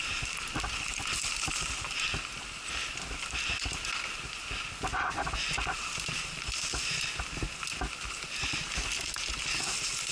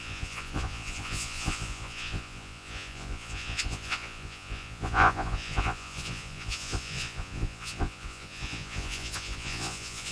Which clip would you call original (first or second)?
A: first